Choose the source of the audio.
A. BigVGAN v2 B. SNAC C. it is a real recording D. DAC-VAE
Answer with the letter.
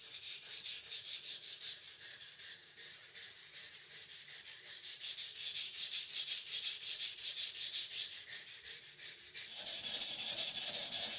A